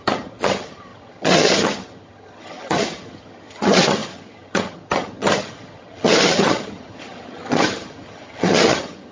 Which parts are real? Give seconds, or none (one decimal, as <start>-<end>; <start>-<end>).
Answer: none